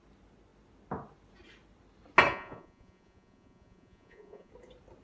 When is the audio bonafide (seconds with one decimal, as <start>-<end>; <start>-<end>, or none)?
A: 0.0-2.3; 4.5-5.0